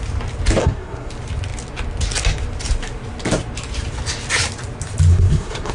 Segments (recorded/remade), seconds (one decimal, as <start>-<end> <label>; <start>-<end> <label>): 0.0-0.6 recorded; 0.6-1.1 remade; 1.1-5.1 recorded; 5.1-5.7 remade